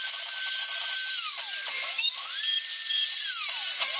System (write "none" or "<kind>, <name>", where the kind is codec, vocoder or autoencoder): none